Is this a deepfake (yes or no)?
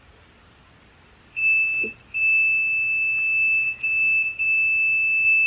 no